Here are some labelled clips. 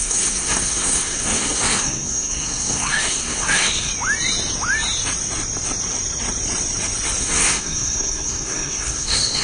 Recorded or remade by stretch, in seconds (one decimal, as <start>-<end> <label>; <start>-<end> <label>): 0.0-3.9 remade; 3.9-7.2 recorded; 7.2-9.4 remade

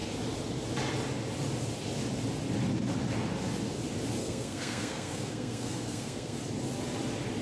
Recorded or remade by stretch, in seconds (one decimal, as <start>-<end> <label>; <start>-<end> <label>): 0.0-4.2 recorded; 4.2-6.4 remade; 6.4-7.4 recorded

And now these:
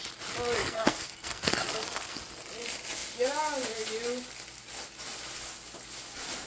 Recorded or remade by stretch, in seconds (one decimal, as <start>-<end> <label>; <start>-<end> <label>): 0.0-0.6 recorded; 0.6-2.2 remade; 2.2-6.5 recorded

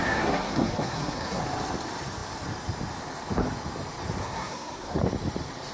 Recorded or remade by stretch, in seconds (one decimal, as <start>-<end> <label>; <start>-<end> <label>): 0.0-1.4 remade; 1.4-4.2 recorded; 4.2-5.0 remade; 5.0-5.7 recorded